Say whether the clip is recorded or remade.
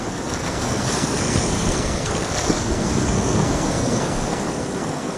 remade